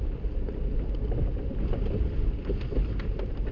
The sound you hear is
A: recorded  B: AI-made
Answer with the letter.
A